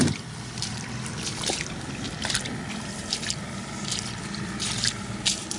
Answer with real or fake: fake